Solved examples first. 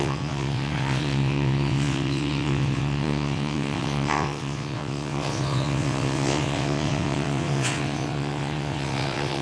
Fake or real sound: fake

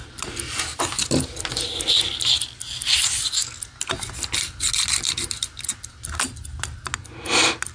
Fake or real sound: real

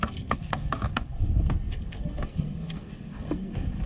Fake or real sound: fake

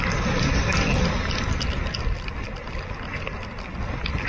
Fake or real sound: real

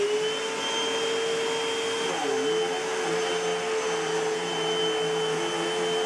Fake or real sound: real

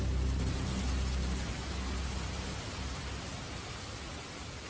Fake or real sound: real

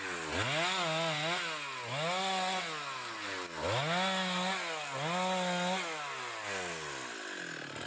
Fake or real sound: real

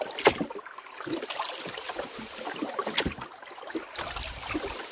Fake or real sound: real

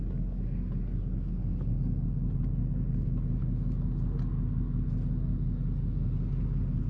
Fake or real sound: real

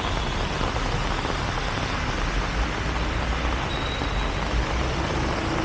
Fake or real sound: real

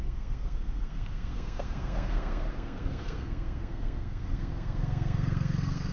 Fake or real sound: fake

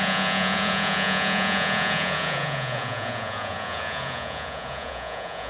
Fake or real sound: fake